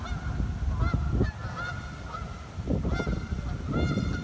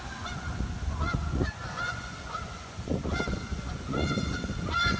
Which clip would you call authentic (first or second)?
first